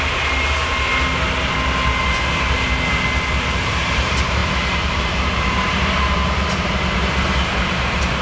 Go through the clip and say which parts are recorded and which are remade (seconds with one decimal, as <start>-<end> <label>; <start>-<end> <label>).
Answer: 0.0-0.9 remade; 0.9-3.6 recorded; 3.6-8.2 remade